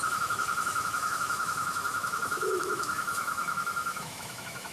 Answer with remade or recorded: remade